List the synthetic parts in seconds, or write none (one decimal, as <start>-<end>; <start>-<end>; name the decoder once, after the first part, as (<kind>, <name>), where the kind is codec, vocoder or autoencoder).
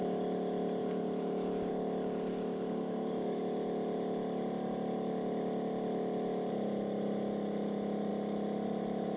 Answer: 0.8-1.7 (codec, DAC); 2.3-3.4